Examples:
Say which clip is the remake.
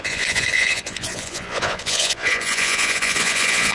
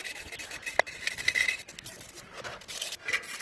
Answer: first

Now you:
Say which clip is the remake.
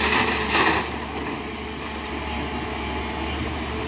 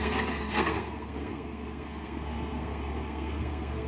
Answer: second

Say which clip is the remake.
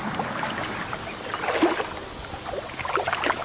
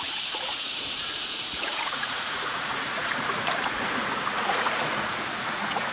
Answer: second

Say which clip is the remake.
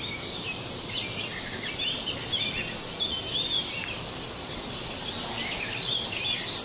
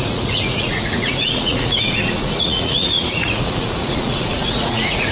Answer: second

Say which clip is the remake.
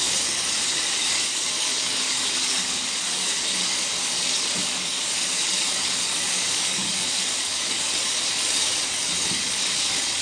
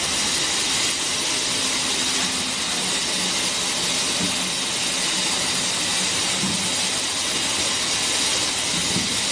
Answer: first